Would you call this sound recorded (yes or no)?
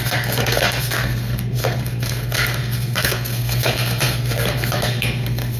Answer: no